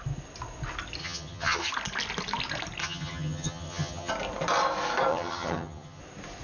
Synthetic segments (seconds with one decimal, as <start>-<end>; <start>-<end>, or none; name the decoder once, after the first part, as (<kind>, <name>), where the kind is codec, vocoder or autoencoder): 1.0-1.7 (vocoder, HiFi-GAN); 2.8-4.1; 5.1-6.0